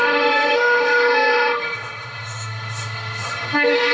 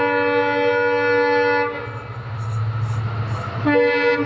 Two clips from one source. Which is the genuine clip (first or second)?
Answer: second